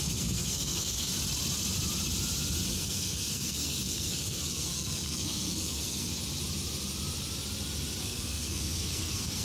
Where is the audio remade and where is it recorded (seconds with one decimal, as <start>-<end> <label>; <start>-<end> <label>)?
0.0-1.1 remade; 1.1-2.7 recorded; 2.7-6.1 remade; 6.1-8.0 recorded; 8.0-9.4 remade